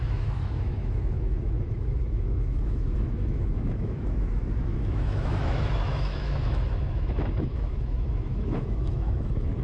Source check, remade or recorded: remade